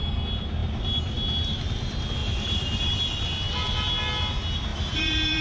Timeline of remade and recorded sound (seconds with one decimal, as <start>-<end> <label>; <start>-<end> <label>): 0.0-2.2 recorded; 2.2-3.0 remade; 3.0-4.7 recorded; 4.7-5.4 remade